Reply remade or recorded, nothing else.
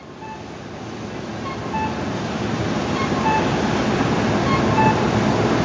recorded